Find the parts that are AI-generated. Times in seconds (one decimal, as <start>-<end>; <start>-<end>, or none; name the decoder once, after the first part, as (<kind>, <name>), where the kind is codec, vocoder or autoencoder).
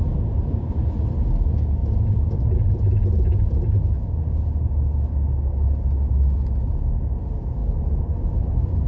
none